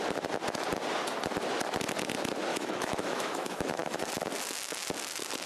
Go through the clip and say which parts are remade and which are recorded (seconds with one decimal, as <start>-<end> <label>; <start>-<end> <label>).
0.0-2.5 recorded; 2.5-4.1 remade; 4.1-5.5 recorded